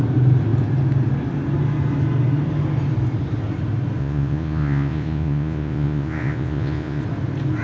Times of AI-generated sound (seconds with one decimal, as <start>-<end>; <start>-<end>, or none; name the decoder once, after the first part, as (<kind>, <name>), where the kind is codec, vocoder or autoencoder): 4.0-7.0 (vocoder, Vocos)